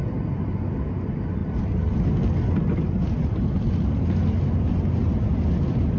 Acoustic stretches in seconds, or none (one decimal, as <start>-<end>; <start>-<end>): 0.0-6.0